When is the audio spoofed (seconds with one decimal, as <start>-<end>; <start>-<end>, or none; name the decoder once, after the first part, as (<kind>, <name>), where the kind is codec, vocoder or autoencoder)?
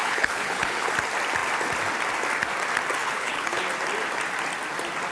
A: 0.0-0.9 (codec, HILCodec); 3.0-3.6